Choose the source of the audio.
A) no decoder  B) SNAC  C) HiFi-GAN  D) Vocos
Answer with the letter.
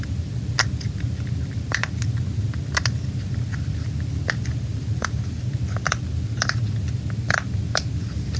A